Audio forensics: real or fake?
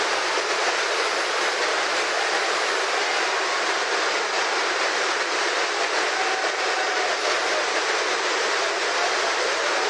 real